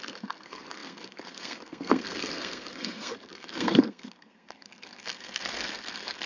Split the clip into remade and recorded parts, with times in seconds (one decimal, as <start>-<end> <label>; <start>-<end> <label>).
0.0-6.3 remade

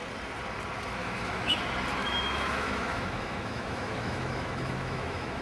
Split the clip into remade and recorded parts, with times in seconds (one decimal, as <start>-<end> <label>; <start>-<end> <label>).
0.0-1.0 recorded; 1.0-1.6 remade; 1.6-2.0 recorded; 2.0-5.4 remade

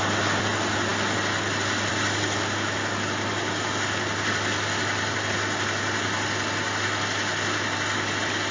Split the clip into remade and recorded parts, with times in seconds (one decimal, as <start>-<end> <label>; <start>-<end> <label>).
0.0-8.5 recorded

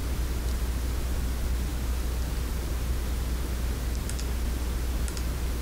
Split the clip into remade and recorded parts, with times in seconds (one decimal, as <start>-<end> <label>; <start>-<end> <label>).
0.0-5.6 recorded

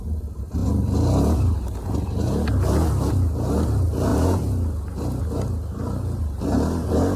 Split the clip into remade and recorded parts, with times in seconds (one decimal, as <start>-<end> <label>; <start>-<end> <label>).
0.0-7.2 recorded